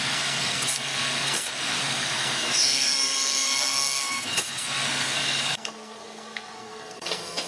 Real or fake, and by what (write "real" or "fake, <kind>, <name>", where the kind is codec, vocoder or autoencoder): fake, codec, SNAC